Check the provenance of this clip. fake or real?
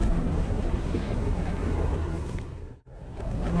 fake